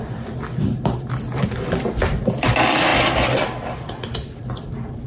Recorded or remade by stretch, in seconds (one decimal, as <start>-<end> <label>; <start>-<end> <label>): 0.0-5.1 recorded